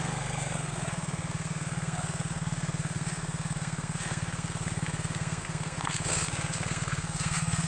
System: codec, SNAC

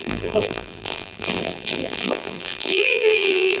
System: vocoder, BigVGAN v2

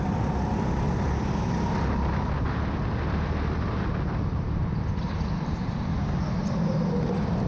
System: none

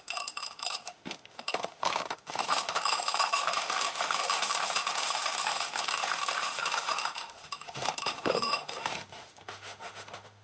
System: autoencoder, DAC-VAE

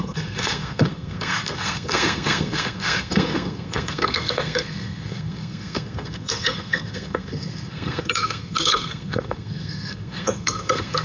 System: codec, SNAC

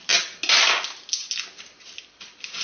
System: none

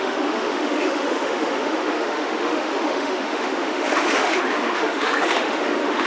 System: autoencoder, DAC-VAE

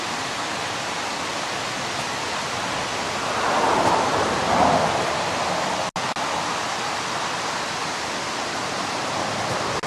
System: none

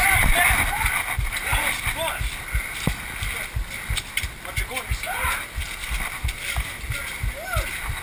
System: none